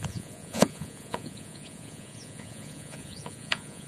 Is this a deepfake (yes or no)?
yes